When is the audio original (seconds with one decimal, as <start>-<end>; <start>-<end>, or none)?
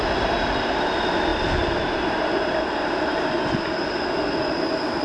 0.0-5.0